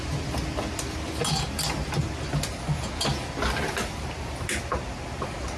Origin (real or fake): real